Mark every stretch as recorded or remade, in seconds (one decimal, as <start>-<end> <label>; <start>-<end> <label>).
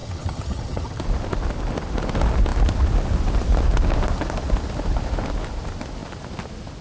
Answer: 0.0-1.0 remade; 1.0-6.8 recorded